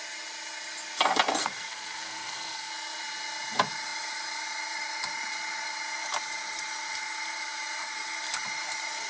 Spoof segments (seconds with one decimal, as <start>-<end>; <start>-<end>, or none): 1.4-2.7